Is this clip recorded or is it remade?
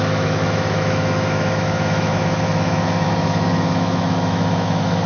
remade